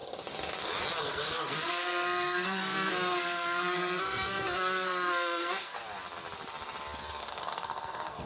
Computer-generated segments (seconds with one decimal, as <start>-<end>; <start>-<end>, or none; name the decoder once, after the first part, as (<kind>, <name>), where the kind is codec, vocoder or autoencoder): 1.0-5.8 (codec, SNAC); 7.2-8.3